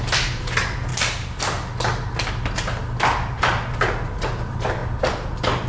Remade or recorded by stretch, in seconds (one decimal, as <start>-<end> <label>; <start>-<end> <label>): 0.0-5.7 recorded

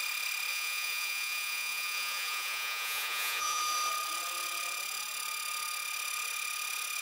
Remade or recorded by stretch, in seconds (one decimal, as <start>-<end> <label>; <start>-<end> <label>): 0.0-0.5 recorded; 0.5-3.6 remade; 3.6-7.0 recorded

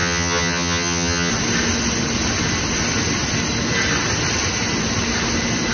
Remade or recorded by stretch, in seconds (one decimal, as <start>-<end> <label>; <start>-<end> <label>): 0.0-1.3 remade; 1.3-5.7 recorded

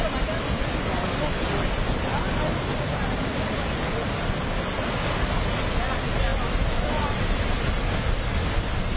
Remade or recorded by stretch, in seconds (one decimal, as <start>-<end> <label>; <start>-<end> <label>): 0.0-9.0 recorded

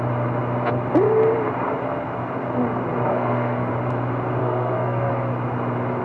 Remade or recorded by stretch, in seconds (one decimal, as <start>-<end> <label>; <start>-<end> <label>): 0.0-3.1 recorded; 3.1-3.7 remade; 3.7-4.4 recorded; 4.4-5.1 remade; 5.1-6.0 recorded

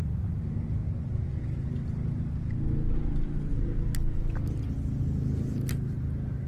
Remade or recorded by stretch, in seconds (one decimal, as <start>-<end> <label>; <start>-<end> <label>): 0.0-6.5 recorded